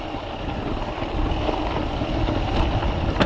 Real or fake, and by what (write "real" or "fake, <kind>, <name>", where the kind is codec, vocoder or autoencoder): real